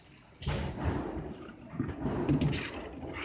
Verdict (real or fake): real